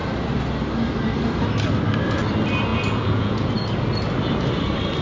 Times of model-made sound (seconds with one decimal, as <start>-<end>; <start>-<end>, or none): 2.7-3.5